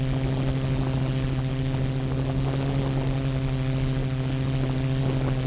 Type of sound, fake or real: real